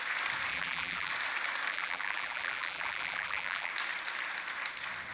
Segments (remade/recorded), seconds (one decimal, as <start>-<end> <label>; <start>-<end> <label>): 0.0-0.5 recorded; 0.5-1.1 remade; 1.1-1.7 recorded; 1.7-3.7 remade; 3.7-5.1 recorded